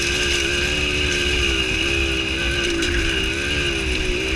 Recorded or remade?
recorded